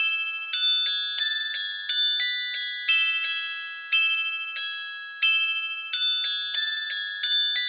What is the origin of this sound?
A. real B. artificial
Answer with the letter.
A